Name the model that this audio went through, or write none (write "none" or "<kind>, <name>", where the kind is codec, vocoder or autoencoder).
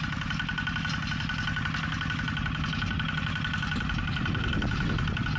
none